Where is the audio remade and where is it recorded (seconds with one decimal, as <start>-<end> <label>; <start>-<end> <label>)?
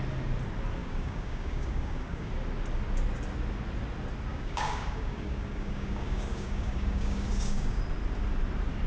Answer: 0.0-0.8 recorded; 0.8-2.3 remade; 2.3-4.3 recorded; 4.3-7.8 remade; 7.8-8.9 recorded